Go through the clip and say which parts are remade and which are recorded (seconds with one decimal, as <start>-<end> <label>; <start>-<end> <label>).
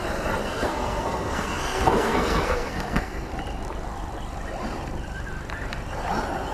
0.0-0.4 recorded; 0.4-3.3 remade; 3.3-6.5 recorded